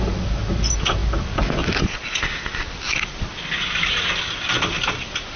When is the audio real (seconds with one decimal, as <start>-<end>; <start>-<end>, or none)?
0.0-5.4